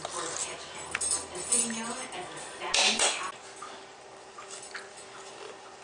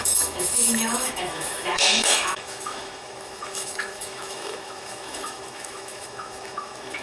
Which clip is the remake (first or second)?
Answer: second